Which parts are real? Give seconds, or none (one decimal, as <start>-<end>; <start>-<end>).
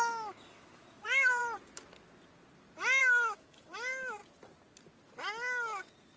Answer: 1.4-3.0; 4.2-6.2